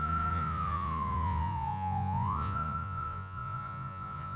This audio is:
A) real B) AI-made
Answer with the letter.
B